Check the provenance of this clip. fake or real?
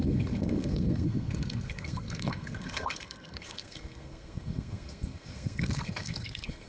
fake